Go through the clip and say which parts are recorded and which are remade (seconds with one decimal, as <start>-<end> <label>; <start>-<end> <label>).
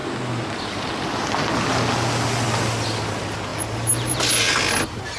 0.0-5.2 recorded